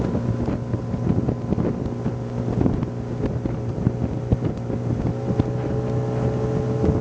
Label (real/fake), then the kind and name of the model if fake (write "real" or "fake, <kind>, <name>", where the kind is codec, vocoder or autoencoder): real